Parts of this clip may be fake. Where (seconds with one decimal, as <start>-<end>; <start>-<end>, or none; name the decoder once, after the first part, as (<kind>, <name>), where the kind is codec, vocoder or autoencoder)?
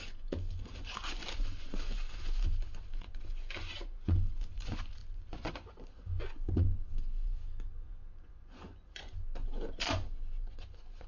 0.0-11.1 (vocoder, Vocos)